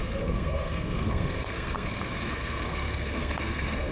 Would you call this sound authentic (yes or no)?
no